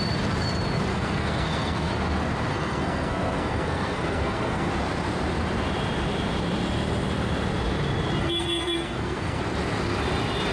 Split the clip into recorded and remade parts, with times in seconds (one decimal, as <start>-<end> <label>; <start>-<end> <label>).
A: 0.0-0.9 recorded; 0.9-1.9 remade; 1.9-2.5 recorded; 2.5-4.7 remade; 4.7-8.2 recorded; 8.2-9.4 remade; 9.4-10.5 recorded